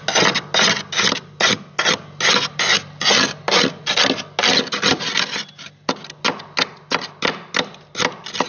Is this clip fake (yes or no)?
no